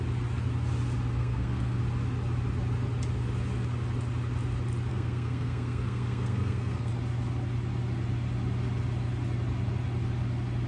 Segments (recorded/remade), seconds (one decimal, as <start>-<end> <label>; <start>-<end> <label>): 0.0-1.2 recorded; 1.2-1.8 remade; 1.8-4.9 recorded; 4.9-6.9 remade; 6.9-10.7 recorded